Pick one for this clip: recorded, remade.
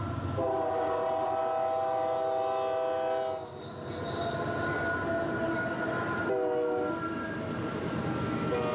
recorded